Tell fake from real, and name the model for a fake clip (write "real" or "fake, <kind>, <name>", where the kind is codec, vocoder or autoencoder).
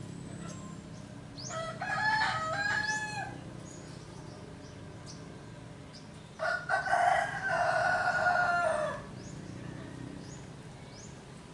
real